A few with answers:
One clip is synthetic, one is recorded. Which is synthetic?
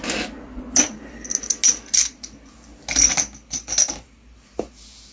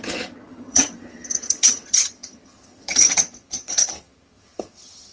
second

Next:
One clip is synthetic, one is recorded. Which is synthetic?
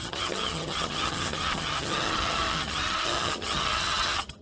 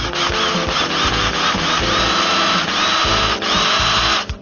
first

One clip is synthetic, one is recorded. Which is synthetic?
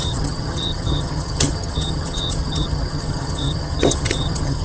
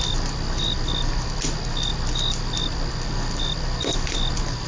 first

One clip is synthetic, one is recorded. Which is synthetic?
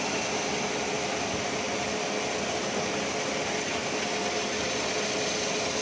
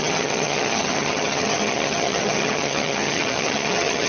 second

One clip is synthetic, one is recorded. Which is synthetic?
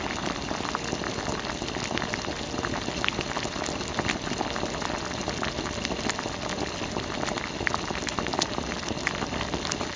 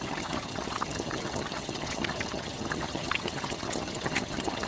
second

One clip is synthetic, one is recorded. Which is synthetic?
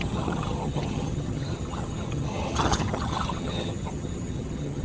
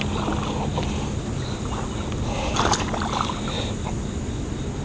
first